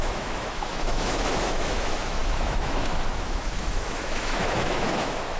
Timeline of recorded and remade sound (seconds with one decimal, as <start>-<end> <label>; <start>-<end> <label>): 0.0-5.4 remade